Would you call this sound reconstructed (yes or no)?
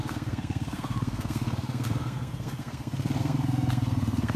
yes